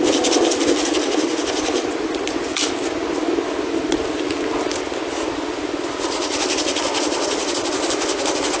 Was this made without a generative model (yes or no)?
yes